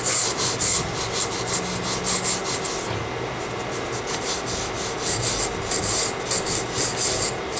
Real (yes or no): yes